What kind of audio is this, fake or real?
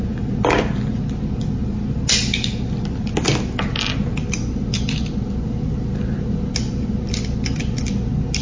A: real